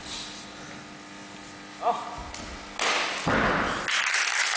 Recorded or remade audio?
recorded